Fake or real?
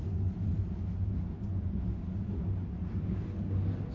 real